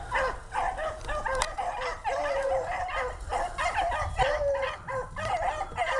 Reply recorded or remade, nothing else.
recorded